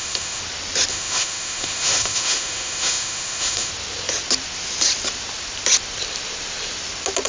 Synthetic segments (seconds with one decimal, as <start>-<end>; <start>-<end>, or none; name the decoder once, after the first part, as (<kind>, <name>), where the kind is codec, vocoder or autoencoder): 0.0-0.4 (autoencoder, DAC-VAE); 0.9-3.7